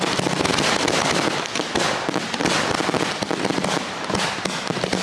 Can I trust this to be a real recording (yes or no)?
yes